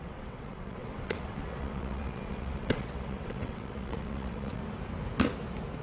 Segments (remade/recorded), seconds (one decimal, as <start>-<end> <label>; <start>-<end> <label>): 0.0-4.6 remade; 4.6-5.8 recorded